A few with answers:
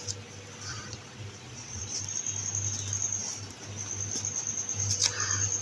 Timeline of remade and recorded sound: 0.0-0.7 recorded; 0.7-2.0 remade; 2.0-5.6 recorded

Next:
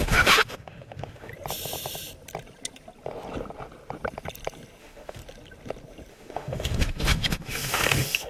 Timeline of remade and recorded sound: 0.0-1.3 remade; 1.3-4.8 recorded; 4.8-5.2 remade; 5.2-6.1 recorded; 6.1-8.3 remade

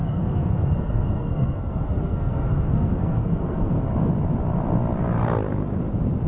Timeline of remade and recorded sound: 0.0-3.8 remade; 3.8-6.3 recorded

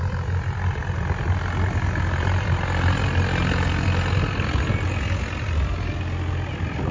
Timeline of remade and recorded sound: 0.0-6.9 recorded

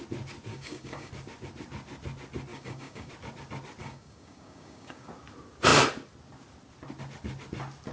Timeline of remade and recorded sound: 0.0-0.5 recorded; 0.5-1.1 remade; 1.1-2.5 recorded; 2.5-3.1 remade; 3.1-3.8 recorded; 3.8-5.1 remade; 5.1-7.9 recorded

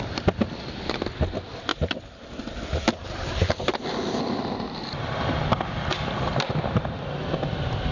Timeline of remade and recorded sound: 0.0-7.9 recorded

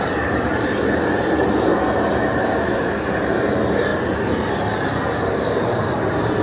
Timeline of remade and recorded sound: 0.0-1.7 remade; 1.7-2.4 recorded; 2.4-6.4 remade

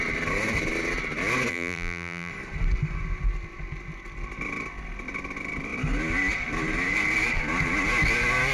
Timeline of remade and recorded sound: 0.0-1.5 recorded; 1.5-2.3 remade; 2.3-8.5 recorded